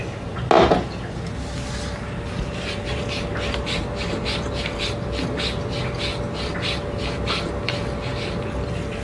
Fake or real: real